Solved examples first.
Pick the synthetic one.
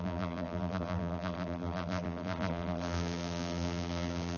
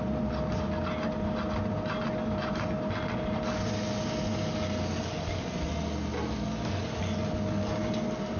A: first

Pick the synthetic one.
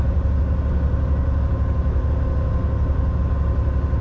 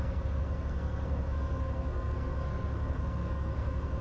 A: second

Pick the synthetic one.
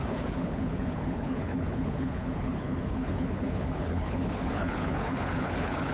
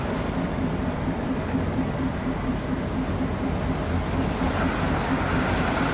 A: first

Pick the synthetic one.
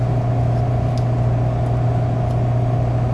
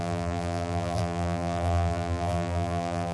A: second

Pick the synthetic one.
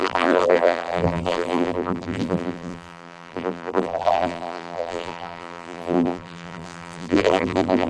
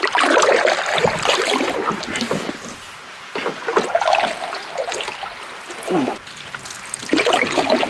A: first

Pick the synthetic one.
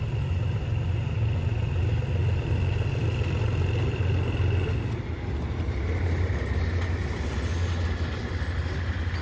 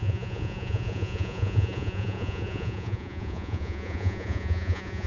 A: second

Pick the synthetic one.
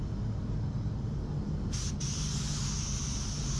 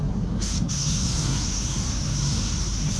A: second